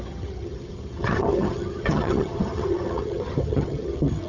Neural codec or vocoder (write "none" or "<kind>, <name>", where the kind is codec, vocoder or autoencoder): vocoder, HiFi-GAN